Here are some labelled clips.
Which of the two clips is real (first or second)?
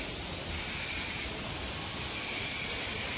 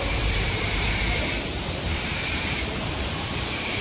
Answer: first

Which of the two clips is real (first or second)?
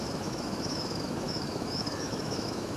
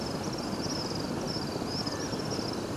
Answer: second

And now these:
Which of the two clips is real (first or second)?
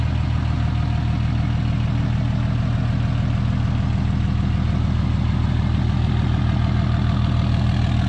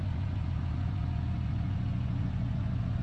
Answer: first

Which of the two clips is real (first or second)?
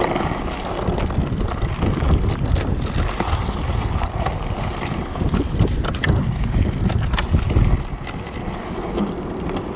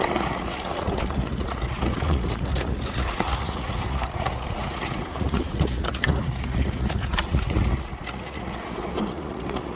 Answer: first